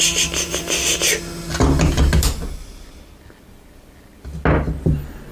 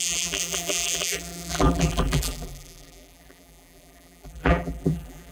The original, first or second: first